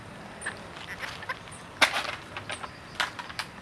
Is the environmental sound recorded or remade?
recorded